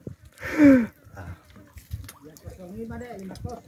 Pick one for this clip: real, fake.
real